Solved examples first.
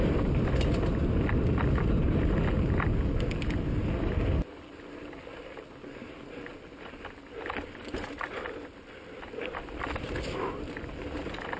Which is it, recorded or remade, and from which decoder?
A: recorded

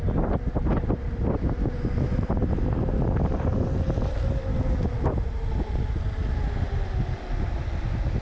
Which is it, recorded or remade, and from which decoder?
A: recorded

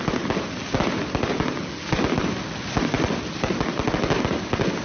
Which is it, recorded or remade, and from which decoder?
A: recorded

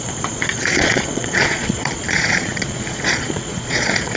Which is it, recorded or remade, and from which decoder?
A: remade, vocoder, Vocos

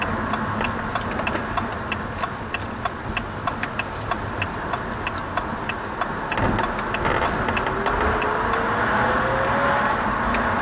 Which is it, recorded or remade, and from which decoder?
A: recorded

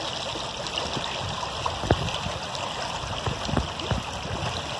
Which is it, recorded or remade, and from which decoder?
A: recorded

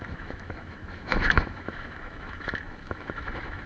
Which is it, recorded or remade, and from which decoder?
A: remade, autoencoder, DAC-VAE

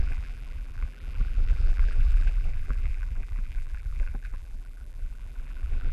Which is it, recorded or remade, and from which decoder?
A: remade, vocoder, BigVGAN v2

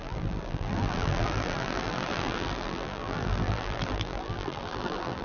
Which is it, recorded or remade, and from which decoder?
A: remade, vocoder, BigVGAN v2